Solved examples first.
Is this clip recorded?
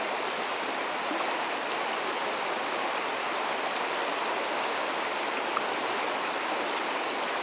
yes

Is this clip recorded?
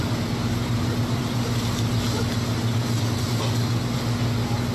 yes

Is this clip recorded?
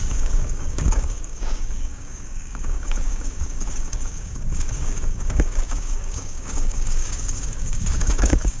no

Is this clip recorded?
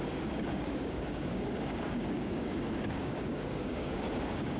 no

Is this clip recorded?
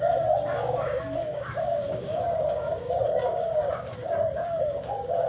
no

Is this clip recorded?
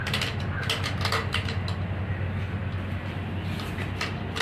yes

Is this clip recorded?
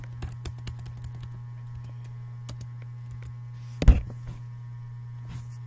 yes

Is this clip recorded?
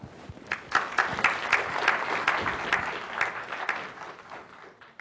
yes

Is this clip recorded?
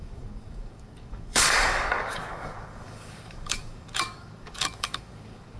no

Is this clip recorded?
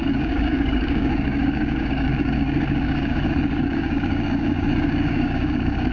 no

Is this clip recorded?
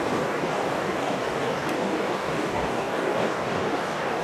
no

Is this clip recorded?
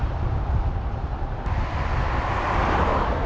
yes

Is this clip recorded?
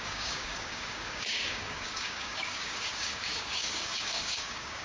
no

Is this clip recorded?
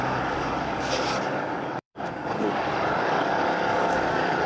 no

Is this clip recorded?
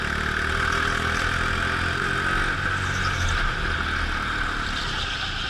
yes